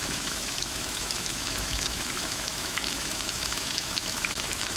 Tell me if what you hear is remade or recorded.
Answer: remade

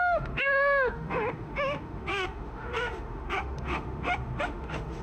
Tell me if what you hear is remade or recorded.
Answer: remade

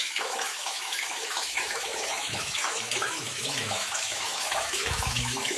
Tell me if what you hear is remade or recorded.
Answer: remade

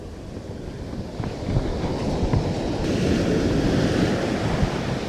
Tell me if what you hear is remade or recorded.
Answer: recorded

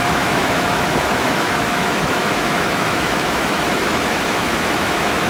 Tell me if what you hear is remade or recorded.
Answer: remade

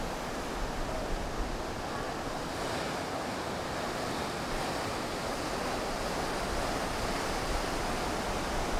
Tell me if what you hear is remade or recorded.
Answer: recorded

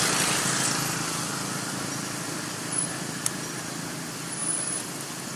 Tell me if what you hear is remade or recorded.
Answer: recorded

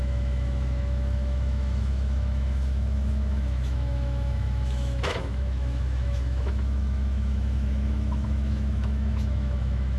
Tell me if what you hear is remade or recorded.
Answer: remade